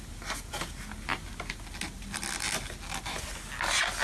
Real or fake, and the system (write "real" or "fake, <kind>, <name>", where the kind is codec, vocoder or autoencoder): real